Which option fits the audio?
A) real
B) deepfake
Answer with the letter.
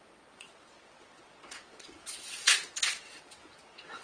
B